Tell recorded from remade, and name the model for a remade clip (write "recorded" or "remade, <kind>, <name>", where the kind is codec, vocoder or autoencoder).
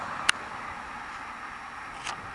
recorded